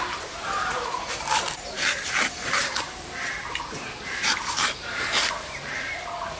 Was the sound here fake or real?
fake